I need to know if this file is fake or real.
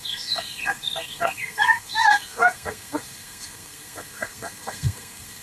fake